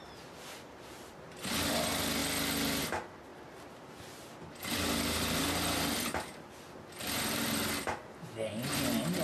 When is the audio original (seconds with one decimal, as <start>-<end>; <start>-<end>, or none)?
0.0-3.3; 7.4-9.2